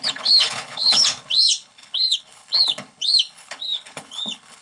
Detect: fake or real fake